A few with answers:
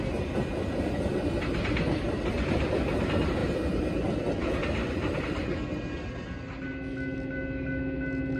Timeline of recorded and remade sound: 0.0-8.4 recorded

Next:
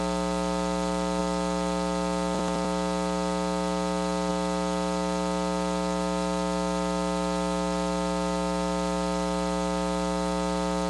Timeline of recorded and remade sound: 0.0-10.9 recorded

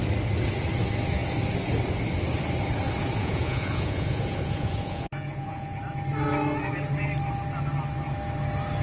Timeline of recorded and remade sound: 0.0-3.2 recorded; 3.2-5.8 remade; 5.8-8.8 recorded

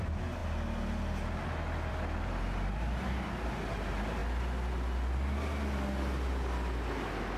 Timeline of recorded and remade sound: 0.0-7.4 recorded

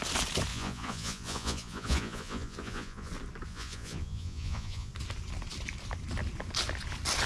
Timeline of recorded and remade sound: 0.0-0.5 recorded; 0.5-3.1 remade; 3.1-3.5 recorded; 3.5-4.9 remade; 4.9-7.3 recorded

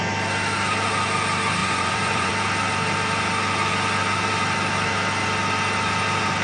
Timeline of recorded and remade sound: 0.0-1.6 recorded; 1.6-2.3 remade; 2.3-6.4 recorded